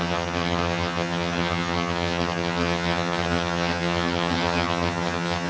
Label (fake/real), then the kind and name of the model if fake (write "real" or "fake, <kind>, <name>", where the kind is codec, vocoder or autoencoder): fake, vocoder, HiFi-GAN